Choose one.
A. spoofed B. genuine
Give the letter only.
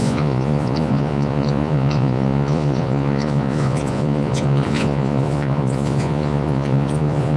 A